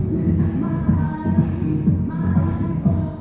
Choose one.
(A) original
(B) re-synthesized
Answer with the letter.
B